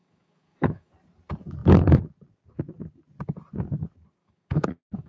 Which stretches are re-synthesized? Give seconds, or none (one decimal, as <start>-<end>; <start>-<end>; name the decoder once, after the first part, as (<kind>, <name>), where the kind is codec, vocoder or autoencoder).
0.0-0.9 (autoencoder, DAC-VAE); 4.2-5.1

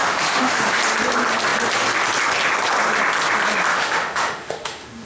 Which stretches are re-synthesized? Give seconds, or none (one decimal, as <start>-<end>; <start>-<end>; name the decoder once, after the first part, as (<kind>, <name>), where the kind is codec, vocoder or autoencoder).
0.0-0.8 (autoencoder, DAC-VAE); 3.7-5.1

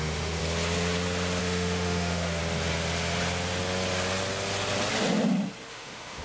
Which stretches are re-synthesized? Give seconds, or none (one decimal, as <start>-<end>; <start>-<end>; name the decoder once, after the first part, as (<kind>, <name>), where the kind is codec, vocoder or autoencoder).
0.0-0.4 (autoencoder, DAC-VAE); 1.4-2.4; 5.7-6.2

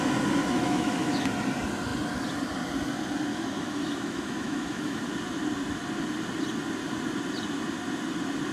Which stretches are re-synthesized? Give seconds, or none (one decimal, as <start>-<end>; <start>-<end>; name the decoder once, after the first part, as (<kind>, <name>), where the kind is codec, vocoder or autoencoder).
0.4-1.3 (autoencoder, DAC-VAE); 3.3-5.0

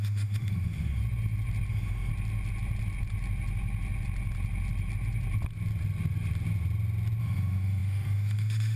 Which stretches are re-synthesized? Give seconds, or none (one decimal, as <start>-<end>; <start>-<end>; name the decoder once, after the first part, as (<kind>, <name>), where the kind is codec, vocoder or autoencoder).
0.0-1.0 (autoencoder, DAC-VAE); 1.7-2.1; 7.2-8.8

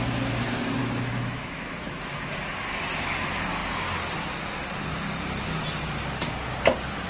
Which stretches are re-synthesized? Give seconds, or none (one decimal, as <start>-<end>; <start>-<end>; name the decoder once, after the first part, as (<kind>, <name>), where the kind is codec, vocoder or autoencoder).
0.8-2.0 (autoencoder, DAC-VAE)

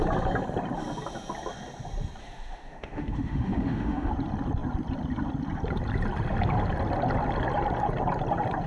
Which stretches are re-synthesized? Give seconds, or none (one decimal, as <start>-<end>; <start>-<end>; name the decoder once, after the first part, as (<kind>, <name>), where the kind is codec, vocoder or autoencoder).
2.2-4.1 (autoencoder, DAC-VAE)

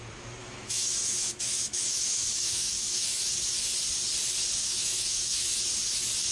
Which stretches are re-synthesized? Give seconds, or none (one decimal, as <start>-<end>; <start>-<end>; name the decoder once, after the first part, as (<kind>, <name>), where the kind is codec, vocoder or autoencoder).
0.4-3.2 (autoencoder, DAC-VAE); 4.6-5.6